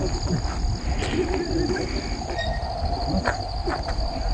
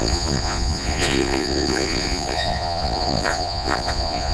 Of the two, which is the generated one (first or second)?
second